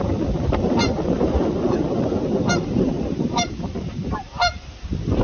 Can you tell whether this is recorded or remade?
remade